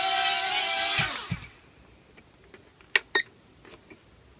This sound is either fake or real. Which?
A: real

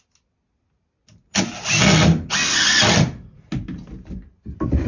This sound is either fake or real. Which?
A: real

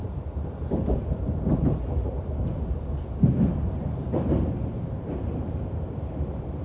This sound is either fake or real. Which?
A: fake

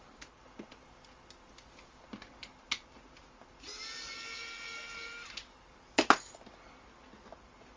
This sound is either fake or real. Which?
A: real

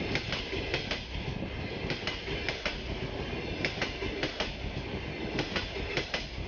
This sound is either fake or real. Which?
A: real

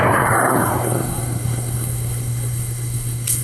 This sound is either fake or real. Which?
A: fake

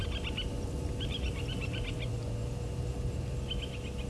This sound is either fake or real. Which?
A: real